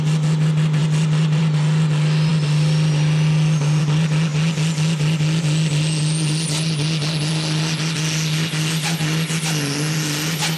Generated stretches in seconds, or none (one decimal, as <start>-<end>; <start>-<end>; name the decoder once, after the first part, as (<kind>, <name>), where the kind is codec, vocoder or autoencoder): none